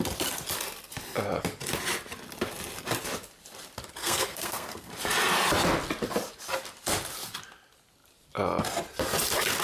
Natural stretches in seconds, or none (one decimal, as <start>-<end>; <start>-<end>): 0.0-4.0; 4.9-9.6